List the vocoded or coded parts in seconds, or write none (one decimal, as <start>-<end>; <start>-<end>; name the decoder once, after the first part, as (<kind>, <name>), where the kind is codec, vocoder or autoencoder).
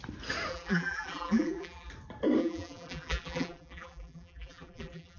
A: 0.5-1.9 (vocoder, BigVGAN v2); 2.4-5.2